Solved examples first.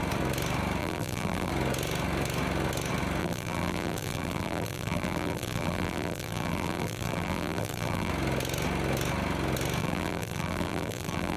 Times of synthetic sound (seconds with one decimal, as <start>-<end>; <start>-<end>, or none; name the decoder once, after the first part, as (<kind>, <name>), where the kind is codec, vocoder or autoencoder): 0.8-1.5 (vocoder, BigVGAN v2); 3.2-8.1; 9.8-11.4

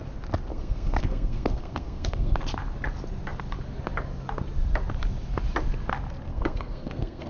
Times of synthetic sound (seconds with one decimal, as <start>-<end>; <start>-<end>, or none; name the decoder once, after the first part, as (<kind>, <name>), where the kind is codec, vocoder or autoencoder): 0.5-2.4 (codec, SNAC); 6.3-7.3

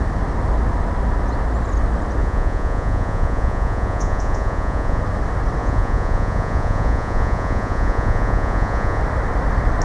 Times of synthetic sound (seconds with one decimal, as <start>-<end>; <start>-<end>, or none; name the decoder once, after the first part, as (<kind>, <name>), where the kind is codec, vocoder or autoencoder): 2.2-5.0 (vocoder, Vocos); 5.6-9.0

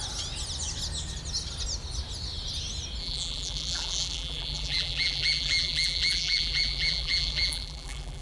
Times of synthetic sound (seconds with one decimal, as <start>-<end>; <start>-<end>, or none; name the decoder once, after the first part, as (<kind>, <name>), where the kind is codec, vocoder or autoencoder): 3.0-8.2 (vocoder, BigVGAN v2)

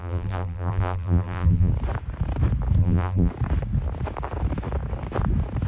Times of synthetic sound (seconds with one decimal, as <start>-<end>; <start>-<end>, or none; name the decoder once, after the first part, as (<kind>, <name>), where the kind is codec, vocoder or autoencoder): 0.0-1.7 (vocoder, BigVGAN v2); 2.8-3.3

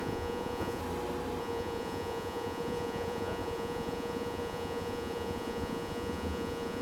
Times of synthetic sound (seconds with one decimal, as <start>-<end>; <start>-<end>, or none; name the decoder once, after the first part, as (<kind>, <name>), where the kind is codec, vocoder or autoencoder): 0.0-0.8 (vocoder, Vocos); 1.4-6.8

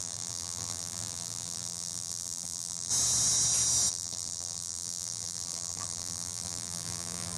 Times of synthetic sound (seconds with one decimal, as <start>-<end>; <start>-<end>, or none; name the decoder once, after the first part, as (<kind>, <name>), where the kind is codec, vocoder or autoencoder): 0.0-2.9 (vocoder, BigVGAN v2); 3.9-7.4

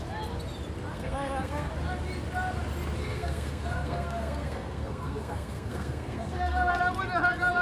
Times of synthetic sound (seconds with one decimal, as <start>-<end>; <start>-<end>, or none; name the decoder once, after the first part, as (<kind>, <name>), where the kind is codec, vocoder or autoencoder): 0.9-1.7 (codec, SNAC); 3.0-6.7